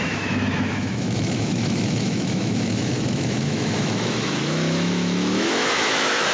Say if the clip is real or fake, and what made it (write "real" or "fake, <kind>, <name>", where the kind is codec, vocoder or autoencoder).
fake, autoencoder, DAC-VAE